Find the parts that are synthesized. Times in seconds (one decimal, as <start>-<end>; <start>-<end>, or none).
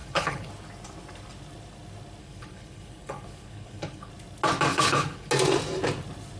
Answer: 0.0-0.5; 2.2-4.1; 4.7-5.3